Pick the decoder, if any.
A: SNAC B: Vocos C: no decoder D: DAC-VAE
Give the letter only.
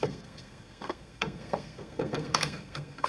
A